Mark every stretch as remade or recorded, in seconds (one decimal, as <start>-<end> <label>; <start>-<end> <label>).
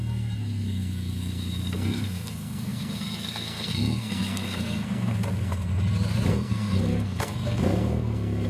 0.0-5.7 remade; 5.7-6.3 recorded; 6.3-8.5 remade